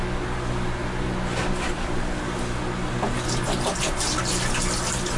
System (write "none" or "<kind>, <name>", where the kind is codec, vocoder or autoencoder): none